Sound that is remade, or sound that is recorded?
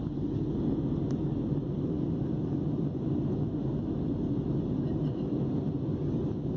recorded